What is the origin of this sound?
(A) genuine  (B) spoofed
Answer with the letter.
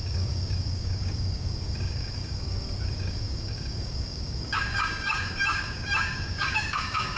B